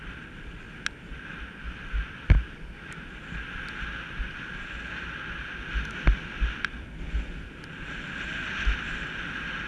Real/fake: real